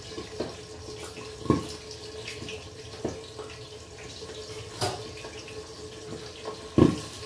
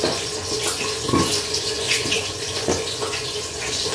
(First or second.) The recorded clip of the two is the first